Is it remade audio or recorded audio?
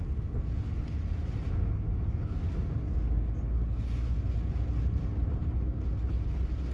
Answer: recorded